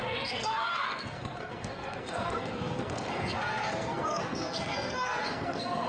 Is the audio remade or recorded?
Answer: remade